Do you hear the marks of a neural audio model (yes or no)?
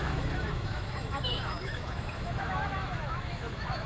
yes